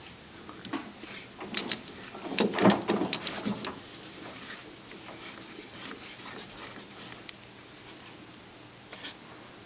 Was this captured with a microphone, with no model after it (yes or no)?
yes